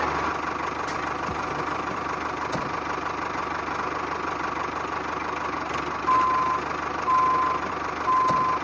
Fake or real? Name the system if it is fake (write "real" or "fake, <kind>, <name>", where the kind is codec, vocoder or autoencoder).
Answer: real